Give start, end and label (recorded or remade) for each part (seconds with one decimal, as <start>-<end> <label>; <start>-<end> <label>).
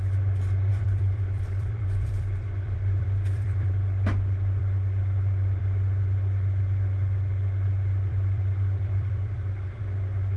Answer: 0.0-0.7 recorded; 0.7-3.7 remade; 3.7-8.1 recorded; 8.1-9.8 remade; 9.8-10.4 recorded